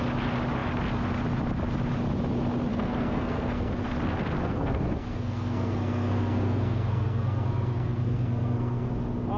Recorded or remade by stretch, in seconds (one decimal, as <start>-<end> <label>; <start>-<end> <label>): 0.0-2.7 recorded; 2.7-3.9 remade; 3.9-4.4 recorded; 4.4-8.9 remade; 8.9-9.4 recorded